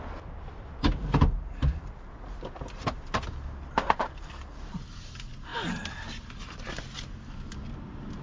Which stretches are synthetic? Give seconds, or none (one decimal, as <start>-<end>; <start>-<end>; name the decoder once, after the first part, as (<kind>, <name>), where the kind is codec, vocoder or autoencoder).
1.0-1.8 (vocoder, BigVGAN v2)